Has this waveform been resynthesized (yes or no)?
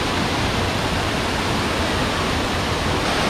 no